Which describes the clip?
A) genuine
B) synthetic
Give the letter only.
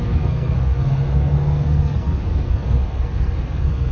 B